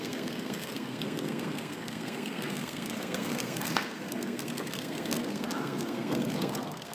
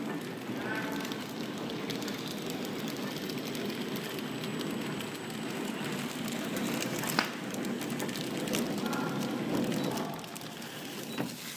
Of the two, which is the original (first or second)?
second